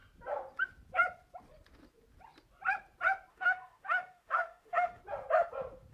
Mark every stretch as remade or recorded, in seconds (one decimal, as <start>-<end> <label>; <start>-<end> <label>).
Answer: 0.0-3.3 recorded; 3.3-5.0 remade; 5.0-5.9 recorded